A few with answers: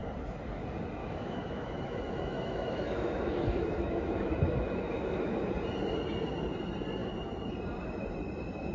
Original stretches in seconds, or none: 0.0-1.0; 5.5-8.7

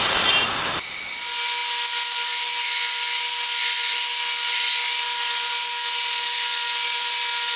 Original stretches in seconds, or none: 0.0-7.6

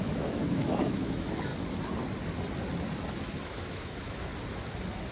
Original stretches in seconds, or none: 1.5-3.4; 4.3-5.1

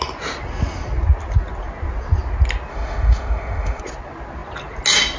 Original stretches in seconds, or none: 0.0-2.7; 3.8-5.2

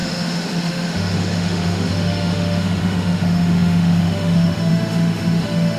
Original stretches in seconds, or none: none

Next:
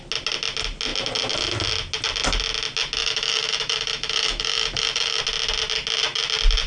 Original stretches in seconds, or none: 0.0-3.0; 5.2-6.7